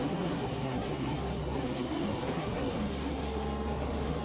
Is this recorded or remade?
remade